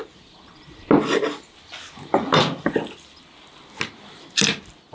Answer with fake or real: real